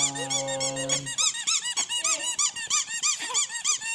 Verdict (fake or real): real